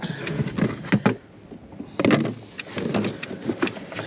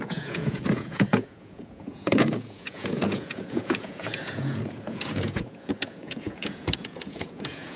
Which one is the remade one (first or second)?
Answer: second